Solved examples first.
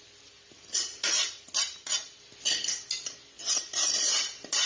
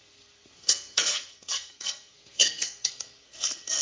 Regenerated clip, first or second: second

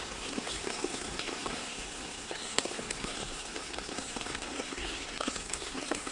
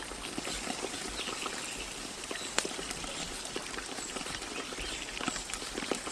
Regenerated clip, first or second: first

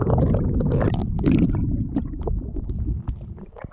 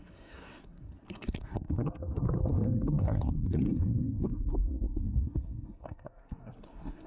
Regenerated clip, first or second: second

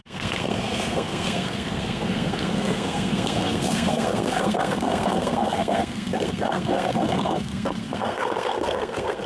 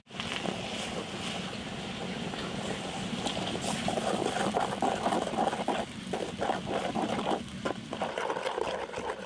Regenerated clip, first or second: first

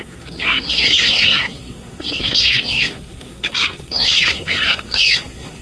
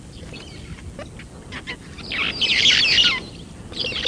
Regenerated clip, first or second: first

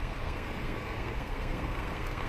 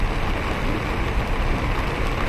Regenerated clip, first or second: first